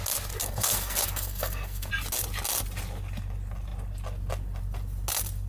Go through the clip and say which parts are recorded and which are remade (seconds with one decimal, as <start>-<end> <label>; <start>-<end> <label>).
0.0-0.4 recorded; 0.4-1.9 remade; 1.9-5.5 recorded